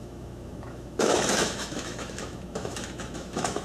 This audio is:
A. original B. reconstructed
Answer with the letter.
B